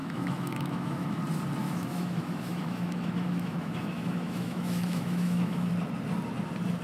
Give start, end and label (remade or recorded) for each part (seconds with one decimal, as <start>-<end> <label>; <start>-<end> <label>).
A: 0.0-1.2 remade; 1.2-1.6 recorded; 1.6-5.7 remade; 5.7-6.8 recorded